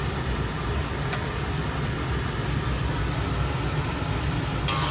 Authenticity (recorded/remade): recorded